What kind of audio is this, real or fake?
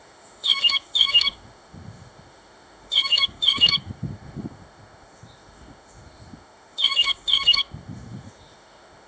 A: fake